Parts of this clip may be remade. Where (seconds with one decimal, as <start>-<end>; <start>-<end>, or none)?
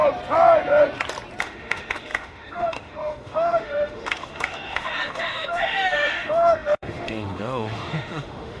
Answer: 1.4-8.6